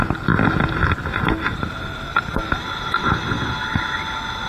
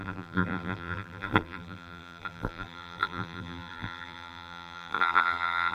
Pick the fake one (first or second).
second